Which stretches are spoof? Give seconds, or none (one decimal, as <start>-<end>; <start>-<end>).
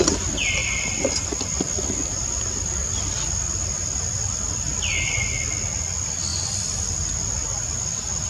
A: 0.6-1.1; 2.1-4.7; 6.3-8.3